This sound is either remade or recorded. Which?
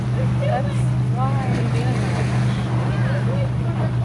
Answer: recorded